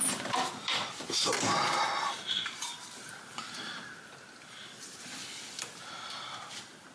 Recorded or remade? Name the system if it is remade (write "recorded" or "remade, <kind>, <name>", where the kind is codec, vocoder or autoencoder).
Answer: remade, vocoder, BigVGAN v2